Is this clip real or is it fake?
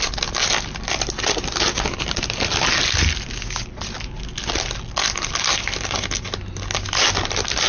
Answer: real